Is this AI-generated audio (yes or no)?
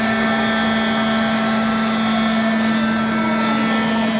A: no